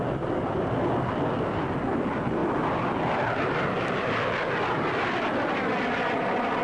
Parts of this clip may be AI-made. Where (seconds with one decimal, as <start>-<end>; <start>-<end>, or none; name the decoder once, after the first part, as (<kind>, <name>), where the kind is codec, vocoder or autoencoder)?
none